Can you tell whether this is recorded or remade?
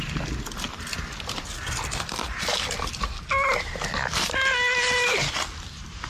recorded